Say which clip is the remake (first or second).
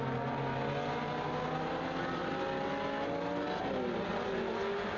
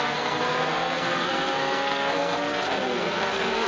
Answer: second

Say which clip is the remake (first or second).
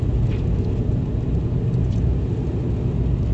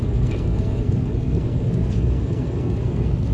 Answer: second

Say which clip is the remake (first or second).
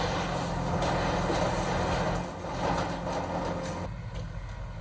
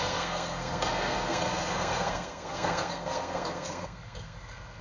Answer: second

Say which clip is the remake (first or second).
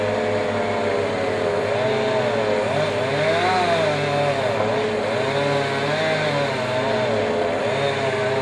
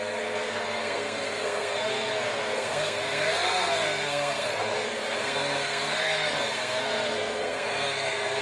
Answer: second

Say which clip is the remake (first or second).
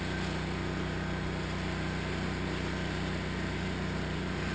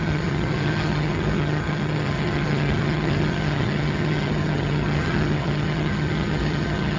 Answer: second